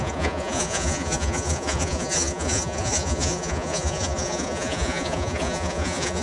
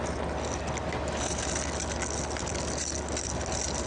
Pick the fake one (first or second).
first